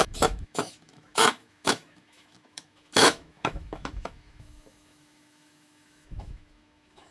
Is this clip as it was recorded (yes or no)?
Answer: no